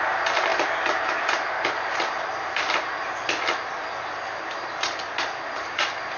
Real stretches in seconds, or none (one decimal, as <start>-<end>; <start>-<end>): 0.0-6.2